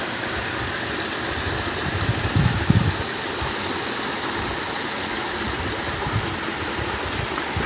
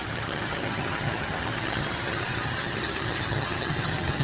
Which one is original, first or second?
first